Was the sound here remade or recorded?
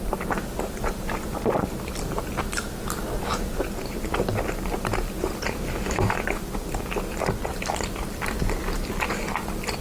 recorded